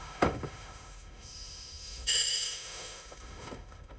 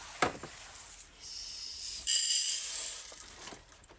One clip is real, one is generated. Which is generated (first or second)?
first